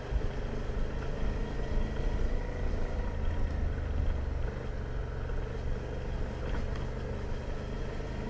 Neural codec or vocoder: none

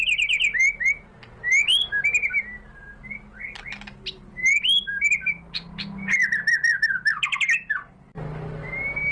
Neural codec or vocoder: none